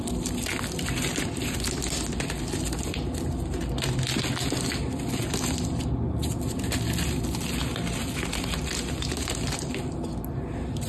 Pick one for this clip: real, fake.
real